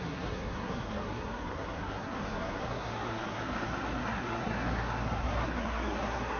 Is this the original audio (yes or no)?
no